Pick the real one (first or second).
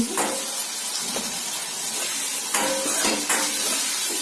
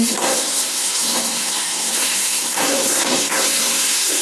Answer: first